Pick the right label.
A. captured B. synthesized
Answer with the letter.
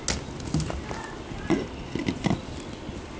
A